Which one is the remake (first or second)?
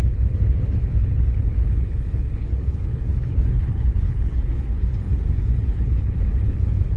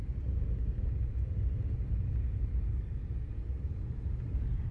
first